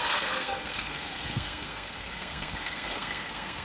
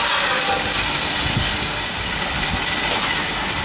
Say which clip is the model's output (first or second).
first